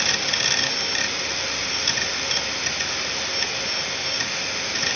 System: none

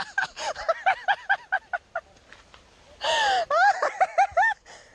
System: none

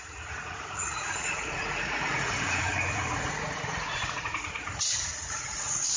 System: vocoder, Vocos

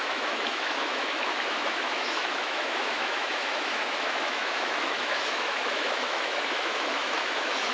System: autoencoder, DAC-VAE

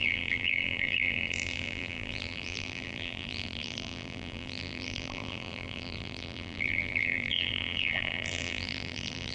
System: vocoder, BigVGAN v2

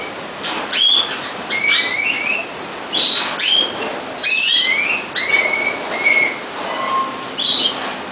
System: none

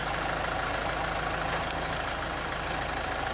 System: none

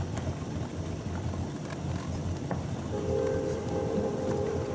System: none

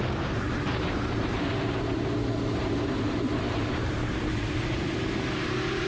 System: vocoder, BigVGAN v2